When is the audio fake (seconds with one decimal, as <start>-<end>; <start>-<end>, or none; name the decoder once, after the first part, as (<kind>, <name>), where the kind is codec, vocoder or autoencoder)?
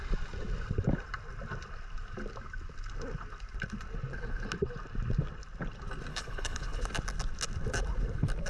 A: 6.1-6.8 (codec, HILCodec)